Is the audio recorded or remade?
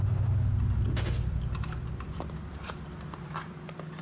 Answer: recorded